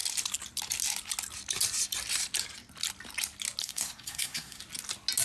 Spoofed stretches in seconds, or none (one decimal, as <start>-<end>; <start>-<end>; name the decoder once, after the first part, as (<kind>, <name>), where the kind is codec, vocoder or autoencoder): 3.6-4.6 (codec, SNAC)